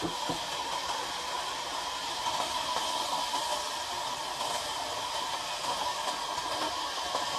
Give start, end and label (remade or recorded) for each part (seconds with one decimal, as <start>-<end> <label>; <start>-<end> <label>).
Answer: 0.0-7.4 recorded